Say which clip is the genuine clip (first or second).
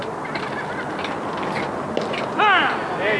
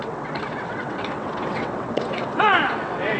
first